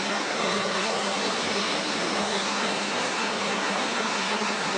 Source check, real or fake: fake